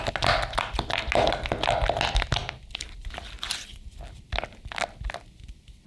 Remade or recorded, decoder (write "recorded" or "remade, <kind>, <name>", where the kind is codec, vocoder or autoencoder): recorded